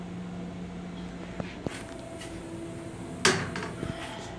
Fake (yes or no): no